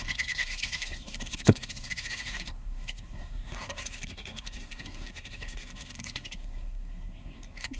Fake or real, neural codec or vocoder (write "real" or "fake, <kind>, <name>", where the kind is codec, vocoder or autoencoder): fake, codec, SNAC